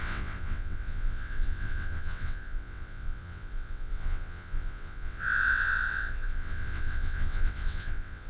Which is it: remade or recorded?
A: remade